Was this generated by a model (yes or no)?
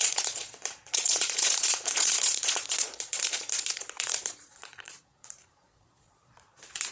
yes